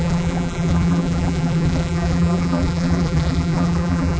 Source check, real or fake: fake